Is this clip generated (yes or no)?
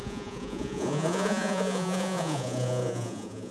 yes